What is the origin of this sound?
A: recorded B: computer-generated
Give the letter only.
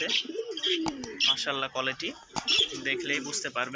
A